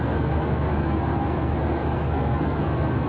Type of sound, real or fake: fake